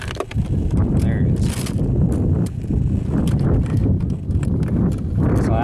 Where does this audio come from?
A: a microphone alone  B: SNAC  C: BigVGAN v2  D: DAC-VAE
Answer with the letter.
C